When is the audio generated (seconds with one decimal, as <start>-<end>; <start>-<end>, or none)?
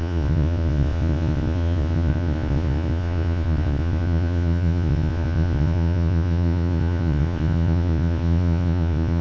0.0-9.2